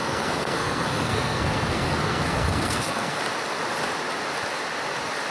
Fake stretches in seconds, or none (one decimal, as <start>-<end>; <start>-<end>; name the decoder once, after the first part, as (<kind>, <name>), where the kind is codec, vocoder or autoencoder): 0.0-3.2 (codec, SNAC)